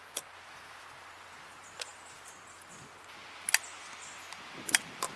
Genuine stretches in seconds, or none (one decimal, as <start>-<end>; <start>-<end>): 0.0-1.9; 2.7-5.2